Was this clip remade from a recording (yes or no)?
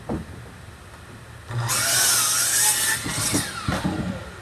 no